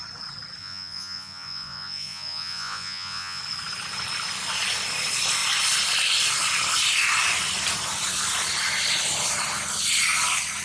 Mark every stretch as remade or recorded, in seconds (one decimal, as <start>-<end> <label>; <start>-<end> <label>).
0.0-0.6 recorded; 0.6-3.4 remade; 3.4-10.6 recorded